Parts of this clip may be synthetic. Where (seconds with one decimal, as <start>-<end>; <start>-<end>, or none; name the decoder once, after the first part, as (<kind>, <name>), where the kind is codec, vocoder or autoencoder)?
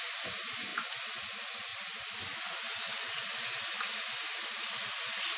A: none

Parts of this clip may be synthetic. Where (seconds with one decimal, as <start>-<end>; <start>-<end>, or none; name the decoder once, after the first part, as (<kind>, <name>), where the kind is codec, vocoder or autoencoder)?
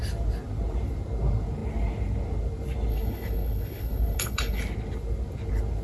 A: 2.9-4.6 (codec, HILCodec)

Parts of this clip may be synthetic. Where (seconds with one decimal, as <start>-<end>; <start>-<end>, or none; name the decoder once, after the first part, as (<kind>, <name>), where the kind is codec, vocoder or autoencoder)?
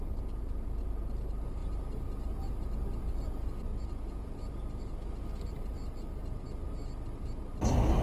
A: none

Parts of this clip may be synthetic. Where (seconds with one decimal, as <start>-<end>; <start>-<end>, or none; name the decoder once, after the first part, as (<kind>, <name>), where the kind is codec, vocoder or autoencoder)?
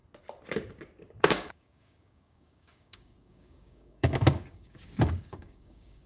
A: 1.2-6.1 (codec, DAC)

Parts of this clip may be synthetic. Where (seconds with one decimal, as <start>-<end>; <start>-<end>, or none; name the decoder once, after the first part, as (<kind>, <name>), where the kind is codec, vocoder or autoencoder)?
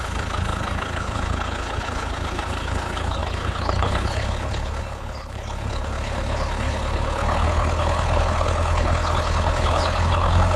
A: 0.0-10.6 (codec, HILCodec)